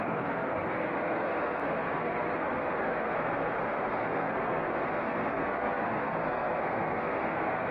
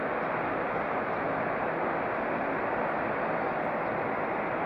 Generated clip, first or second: first